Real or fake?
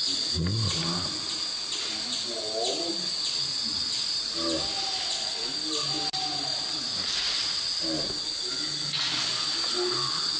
real